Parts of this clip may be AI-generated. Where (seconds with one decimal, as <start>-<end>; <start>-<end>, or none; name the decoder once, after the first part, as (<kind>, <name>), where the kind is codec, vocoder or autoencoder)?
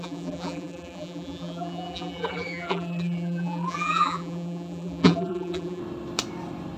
0.0-5.8 (vocoder, BigVGAN v2)